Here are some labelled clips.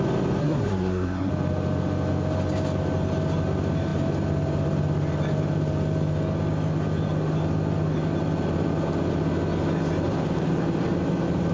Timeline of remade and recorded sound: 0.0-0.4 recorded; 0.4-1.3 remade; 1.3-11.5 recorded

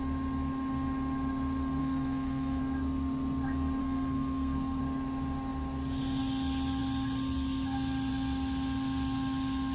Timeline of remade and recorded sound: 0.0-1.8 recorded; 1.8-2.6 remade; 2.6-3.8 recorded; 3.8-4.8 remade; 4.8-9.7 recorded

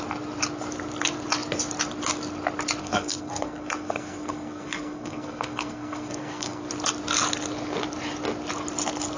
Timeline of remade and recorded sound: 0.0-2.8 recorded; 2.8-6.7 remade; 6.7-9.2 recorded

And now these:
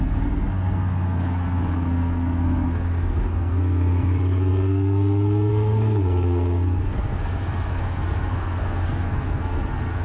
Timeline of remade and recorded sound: 0.0-10.0 remade

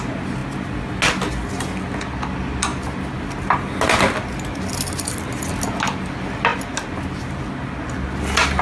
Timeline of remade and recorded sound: 0.0-8.6 recorded

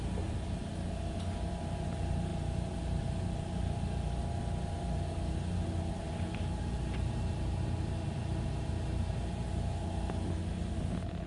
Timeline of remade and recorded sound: 0.0-11.3 recorded

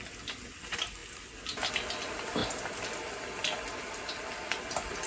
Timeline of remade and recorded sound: 0.0-5.1 recorded

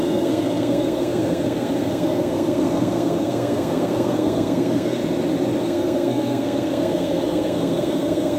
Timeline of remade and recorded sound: 0.0-5.0 remade; 5.0-5.6 recorded; 5.6-8.4 remade